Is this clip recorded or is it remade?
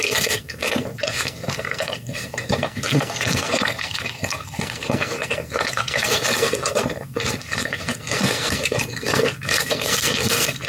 remade